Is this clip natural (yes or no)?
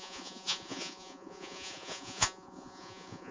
no